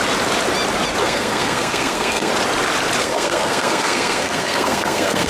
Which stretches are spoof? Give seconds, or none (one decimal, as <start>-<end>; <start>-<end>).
1.0-2.3; 3.0-5.3